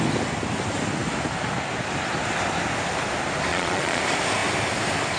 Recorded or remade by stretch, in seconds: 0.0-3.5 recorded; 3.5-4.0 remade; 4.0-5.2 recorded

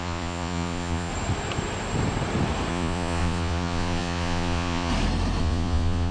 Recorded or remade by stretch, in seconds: 0.0-1.1 remade; 1.1-2.7 recorded; 2.7-4.9 remade; 4.9-5.4 recorded; 5.4-6.1 remade

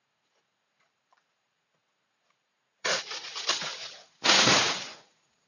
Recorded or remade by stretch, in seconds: 0.0-5.5 remade

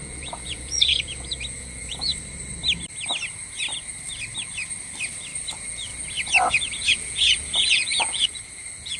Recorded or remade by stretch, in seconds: 0.0-2.1 remade; 2.1-5.5 recorded; 5.5-5.9 remade; 5.9-6.5 recorded; 6.5-9.0 remade